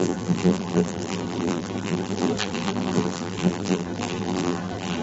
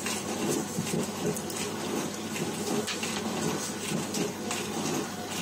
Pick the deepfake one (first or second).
first